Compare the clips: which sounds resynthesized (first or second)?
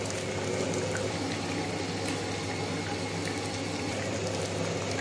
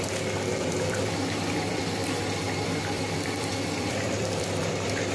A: second